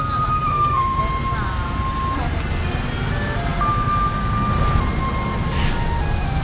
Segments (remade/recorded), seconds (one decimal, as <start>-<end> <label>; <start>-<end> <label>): 0.0-0.5 recorded; 0.5-1.0 remade; 1.0-6.4 recorded